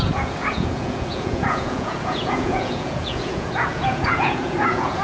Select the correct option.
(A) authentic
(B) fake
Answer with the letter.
B